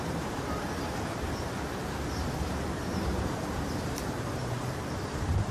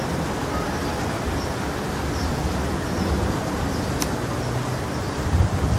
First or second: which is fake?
first